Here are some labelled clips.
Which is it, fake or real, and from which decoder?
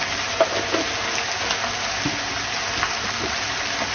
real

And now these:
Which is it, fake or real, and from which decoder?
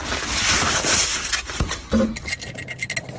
real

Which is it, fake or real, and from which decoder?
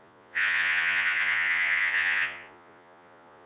fake, vocoder, Vocos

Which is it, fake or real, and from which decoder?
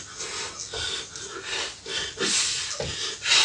real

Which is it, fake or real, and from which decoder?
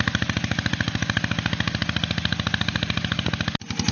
real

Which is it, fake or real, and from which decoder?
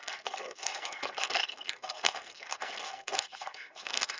fake, codec, SNAC